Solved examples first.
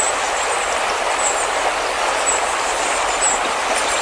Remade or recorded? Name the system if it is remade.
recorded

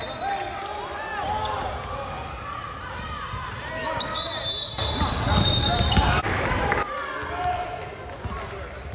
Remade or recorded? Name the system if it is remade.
recorded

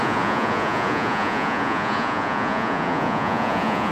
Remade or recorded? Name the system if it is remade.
remade, vocoder, Vocos